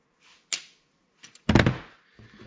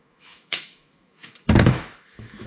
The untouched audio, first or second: first